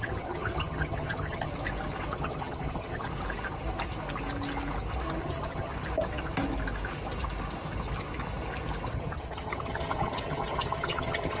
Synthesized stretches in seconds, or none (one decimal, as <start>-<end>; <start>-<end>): 0.0-1.5; 2.1-3.1; 5.2-5.7; 8.9-11.4